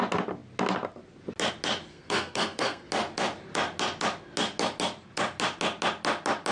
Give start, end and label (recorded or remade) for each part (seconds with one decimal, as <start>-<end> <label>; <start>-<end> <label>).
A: 0.0-1.9 recorded; 1.9-2.9 remade; 2.9-6.5 recorded